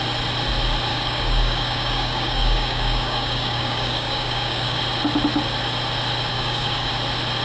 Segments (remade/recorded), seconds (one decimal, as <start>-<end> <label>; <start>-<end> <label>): 0.0-0.9 recorded; 0.9-4.8 remade; 4.8-6.3 recorded; 6.3-6.9 remade; 6.9-7.4 recorded